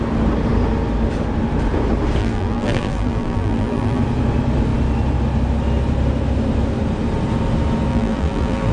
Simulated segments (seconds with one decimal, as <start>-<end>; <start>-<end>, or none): 2.2-4.0; 7.9-8.7